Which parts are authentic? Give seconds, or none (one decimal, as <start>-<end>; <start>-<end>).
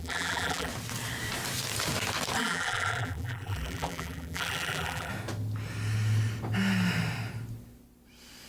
0.7-2.4; 5.1-8.5